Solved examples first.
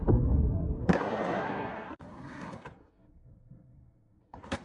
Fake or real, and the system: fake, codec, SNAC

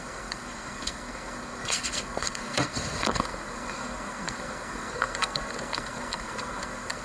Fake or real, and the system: fake, codec, SNAC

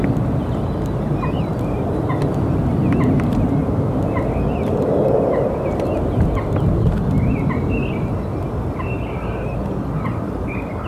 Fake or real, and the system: real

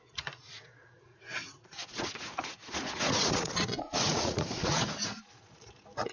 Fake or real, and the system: fake, vocoder, Vocos